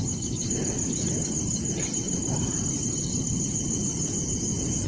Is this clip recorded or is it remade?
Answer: recorded